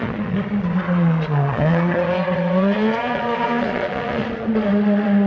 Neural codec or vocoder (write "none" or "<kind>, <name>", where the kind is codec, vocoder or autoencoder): vocoder, Vocos